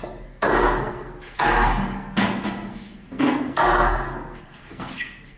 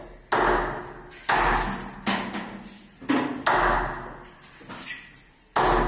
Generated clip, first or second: first